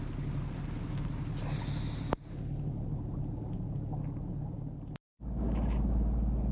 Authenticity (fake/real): real